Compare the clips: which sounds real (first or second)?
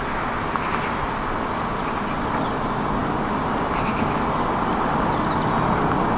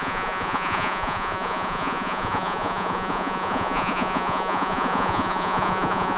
first